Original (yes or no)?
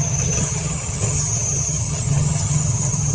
no